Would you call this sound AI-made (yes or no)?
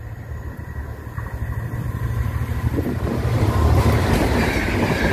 yes